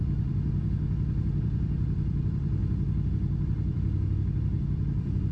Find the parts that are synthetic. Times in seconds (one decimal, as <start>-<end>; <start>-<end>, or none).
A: 0.0-2.6; 3.1-5.3